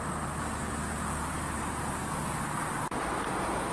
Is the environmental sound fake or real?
real